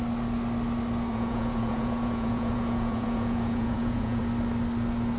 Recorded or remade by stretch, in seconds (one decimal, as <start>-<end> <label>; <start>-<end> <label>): 0.0-1.1 recorded; 1.1-4.2 remade; 4.2-5.2 recorded